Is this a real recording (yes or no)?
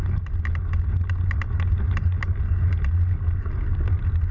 yes